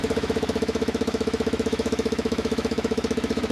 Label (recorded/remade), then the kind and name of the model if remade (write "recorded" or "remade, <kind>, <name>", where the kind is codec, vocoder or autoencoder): remade, autoencoder, DAC-VAE